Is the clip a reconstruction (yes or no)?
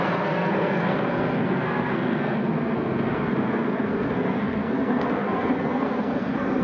yes